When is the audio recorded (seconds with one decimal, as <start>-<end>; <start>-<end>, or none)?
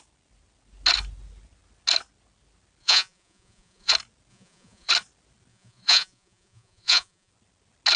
0.0-2.8; 3.9-4.3; 4.9-5.5; 7.3-8.0